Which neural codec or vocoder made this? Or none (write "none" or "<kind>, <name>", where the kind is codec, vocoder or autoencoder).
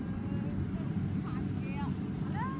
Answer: none